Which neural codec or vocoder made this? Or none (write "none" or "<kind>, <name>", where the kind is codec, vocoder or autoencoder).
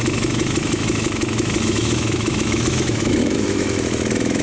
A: autoencoder, DAC-VAE